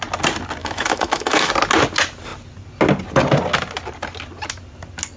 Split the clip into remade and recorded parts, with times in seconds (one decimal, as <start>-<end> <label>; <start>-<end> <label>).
0.0-0.6 recorded; 0.6-1.5 remade; 1.5-5.2 recorded